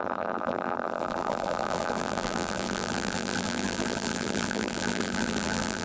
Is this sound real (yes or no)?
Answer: no